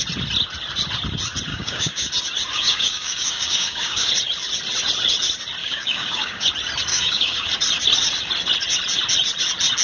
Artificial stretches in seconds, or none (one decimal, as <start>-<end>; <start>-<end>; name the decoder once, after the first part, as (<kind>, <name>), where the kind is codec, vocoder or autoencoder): 1.5-2.1 (codec, DAC); 2.5-4.1; 5.6-6.5; 6.9-7.5